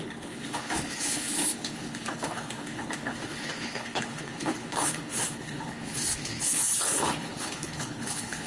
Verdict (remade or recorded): remade